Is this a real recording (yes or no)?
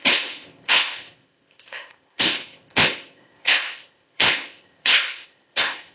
no